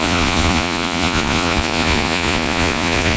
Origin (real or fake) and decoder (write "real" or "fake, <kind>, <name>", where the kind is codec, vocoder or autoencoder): fake, vocoder, Vocos